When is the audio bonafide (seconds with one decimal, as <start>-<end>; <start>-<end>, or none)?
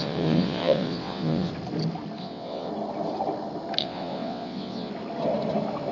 1.5-2.2; 2.7-3.8; 4.9-5.9